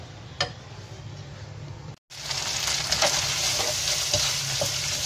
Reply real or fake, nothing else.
real